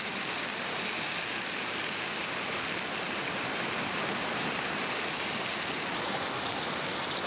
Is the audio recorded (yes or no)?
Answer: yes